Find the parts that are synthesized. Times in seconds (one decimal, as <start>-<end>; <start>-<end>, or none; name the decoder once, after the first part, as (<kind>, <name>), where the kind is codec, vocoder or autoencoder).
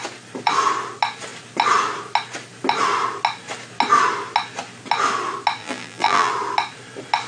5.6-6.3 (vocoder, BigVGAN v2)